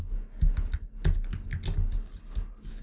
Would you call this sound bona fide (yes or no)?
yes